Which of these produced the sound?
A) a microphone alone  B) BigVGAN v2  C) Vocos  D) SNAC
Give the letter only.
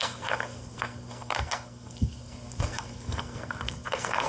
D